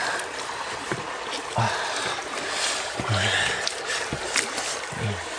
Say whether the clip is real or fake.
real